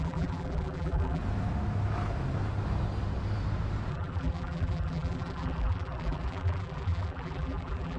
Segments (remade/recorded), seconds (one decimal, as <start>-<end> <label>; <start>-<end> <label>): 0.0-1.2 remade; 1.2-3.9 recorded; 3.9-8.0 remade